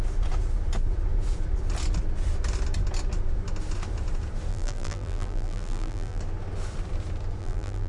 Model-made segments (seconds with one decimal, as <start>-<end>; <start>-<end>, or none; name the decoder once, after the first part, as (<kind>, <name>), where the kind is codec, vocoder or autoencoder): 4.5-6.2 (vocoder, BigVGAN v2); 7.4-7.9